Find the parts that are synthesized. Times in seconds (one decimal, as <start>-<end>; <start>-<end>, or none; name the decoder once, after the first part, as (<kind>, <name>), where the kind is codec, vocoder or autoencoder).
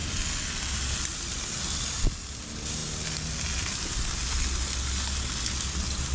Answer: none